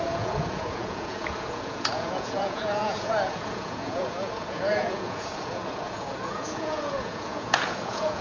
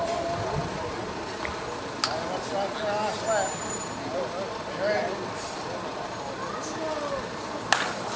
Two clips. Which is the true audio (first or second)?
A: second